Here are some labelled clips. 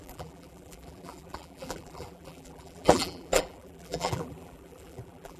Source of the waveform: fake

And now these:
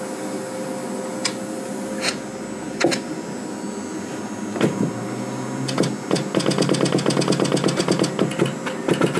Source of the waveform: real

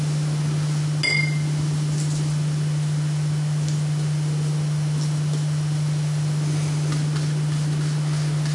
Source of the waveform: real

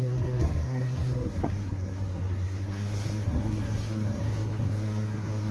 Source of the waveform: fake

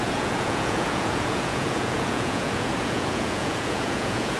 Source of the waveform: fake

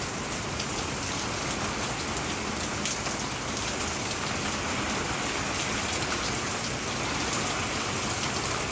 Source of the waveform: real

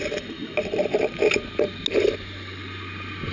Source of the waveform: real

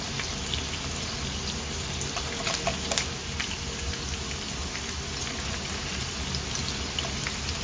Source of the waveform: real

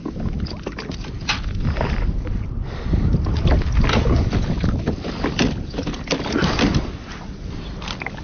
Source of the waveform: real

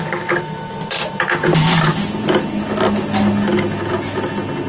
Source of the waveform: real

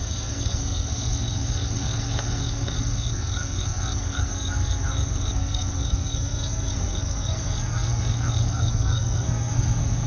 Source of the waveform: fake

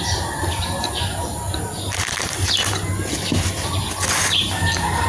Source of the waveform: real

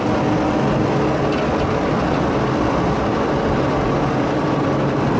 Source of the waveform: real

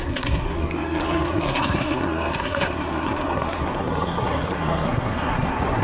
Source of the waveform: fake